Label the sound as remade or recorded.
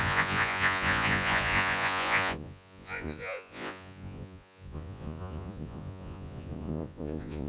remade